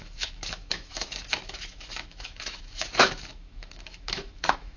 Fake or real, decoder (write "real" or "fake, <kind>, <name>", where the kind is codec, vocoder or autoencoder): fake, autoencoder, DAC-VAE